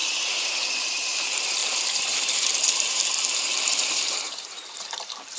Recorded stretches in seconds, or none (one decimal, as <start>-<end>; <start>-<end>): none